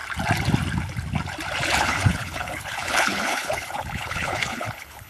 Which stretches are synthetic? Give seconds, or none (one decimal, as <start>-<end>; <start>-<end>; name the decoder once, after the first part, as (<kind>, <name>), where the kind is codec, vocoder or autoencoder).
1.8-5.1 (codec, HILCodec)